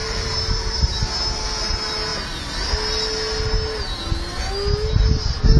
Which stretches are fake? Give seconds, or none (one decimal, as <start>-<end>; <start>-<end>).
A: 0.0-1.0